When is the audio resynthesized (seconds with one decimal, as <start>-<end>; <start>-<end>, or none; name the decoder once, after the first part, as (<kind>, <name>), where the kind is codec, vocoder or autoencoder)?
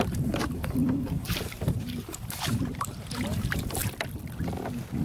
0.0-3.8 (vocoder, BigVGAN v2)